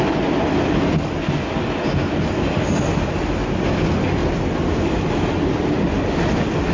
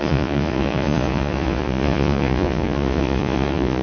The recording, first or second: first